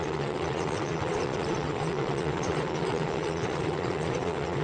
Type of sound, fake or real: fake